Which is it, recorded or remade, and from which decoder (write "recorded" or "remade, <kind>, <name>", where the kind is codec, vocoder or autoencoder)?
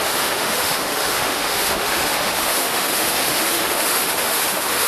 remade, autoencoder, DAC-VAE